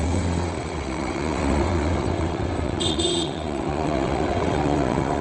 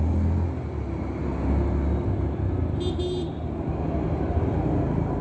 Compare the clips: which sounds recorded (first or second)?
second